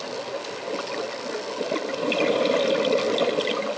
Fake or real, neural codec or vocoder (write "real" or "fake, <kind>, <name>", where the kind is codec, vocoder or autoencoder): real